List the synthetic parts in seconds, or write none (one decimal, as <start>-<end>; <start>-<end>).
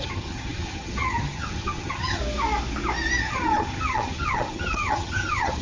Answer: 0.0-2.2; 3.2-5.6